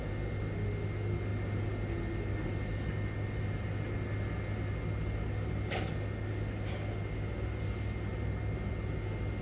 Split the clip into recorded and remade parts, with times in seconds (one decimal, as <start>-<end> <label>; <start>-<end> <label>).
0.0-9.4 recorded

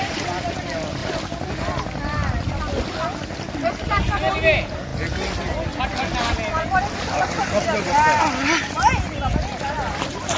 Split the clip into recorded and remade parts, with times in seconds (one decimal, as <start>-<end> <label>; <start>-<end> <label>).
0.0-10.4 recorded

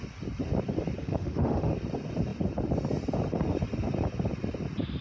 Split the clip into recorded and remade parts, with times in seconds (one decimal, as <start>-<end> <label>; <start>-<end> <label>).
0.0-1.0 recorded; 1.0-1.7 remade; 1.7-5.0 recorded

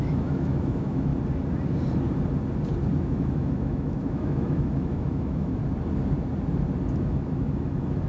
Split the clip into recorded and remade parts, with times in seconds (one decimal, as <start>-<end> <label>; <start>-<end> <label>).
0.0-1.1 remade; 1.1-3.0 recorded; 3.0-5.6 remade; 5.6-7.0 recorded; 7.0-8.1 remade

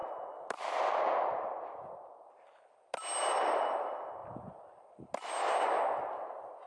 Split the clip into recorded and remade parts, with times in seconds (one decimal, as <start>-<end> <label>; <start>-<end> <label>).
0.0-6.7 recorded